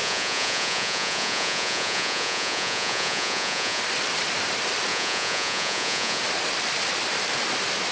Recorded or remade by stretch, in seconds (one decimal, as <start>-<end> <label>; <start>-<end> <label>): 0.0-3.8 remade; 3.8-4.9 recorded; 4.9-6.2 remade; 6.2-7.9 recorded